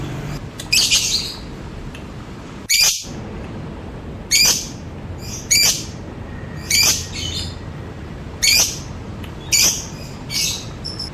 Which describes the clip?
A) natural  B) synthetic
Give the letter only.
A